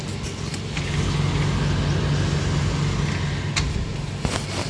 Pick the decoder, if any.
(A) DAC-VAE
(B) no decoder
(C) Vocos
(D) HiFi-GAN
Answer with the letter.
B